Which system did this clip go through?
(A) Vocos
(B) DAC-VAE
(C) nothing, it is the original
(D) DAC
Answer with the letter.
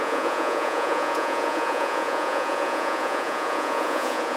A